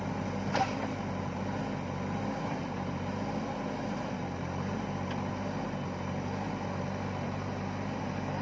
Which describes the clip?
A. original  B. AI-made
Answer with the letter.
A